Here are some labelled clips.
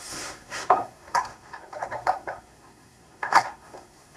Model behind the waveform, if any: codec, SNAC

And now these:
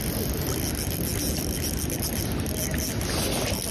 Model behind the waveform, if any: none